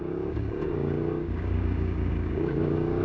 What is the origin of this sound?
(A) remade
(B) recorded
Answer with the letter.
A